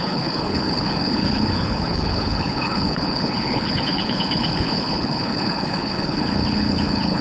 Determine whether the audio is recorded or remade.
remade